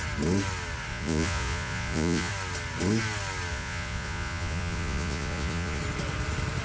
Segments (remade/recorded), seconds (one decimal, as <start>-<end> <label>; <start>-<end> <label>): 0.0-0.9 recorded; 0.9-2.3 remade; 2.3-3.5 recorded; 3.5-5.8 remade; 5.8-6.6 recorded